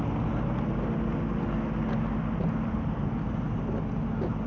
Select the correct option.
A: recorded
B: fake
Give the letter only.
A